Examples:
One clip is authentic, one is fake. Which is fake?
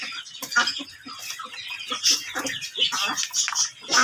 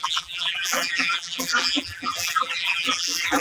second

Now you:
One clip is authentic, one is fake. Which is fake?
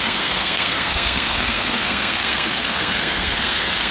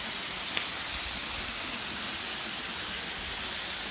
first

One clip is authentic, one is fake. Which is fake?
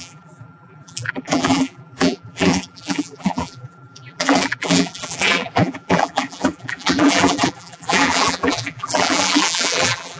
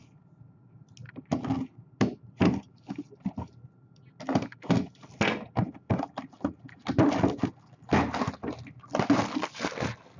first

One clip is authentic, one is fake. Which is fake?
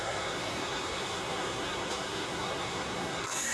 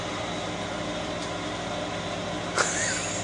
first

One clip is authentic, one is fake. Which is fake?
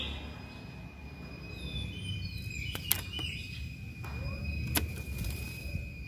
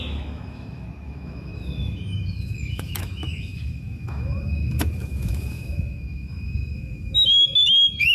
second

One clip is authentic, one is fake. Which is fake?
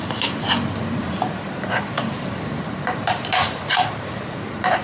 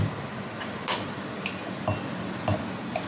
first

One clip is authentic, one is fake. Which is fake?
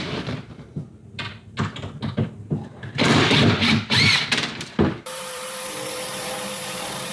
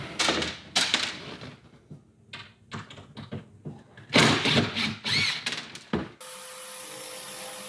first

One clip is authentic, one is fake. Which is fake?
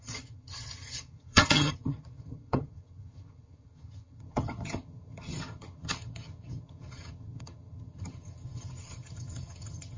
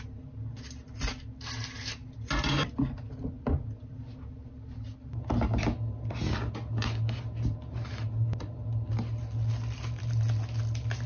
first